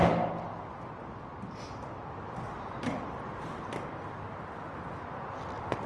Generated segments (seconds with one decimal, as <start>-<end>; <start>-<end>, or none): none